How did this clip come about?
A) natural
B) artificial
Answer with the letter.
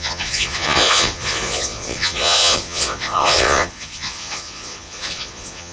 B